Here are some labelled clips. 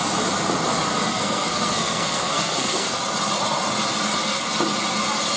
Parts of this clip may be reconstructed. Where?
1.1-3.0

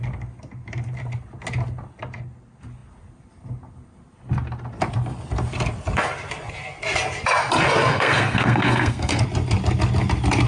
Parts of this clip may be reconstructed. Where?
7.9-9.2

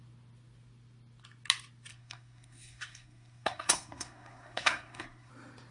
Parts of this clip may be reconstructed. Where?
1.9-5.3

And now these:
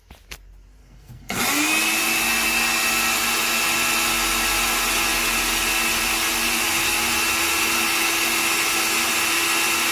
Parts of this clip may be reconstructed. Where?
0.8-1.4

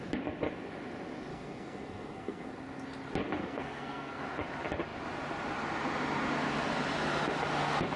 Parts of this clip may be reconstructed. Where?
1.3-2.5; 3.4-4.2

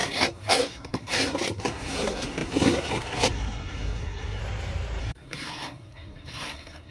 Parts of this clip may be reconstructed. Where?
0.0-4.4; 5.0-6.9